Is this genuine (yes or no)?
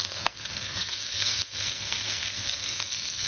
no